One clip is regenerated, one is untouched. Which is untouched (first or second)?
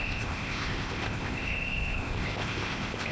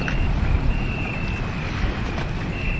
second